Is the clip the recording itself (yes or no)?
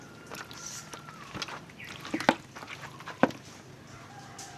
yes